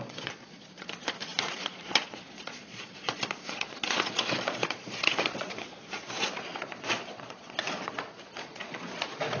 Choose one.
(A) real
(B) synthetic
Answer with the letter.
B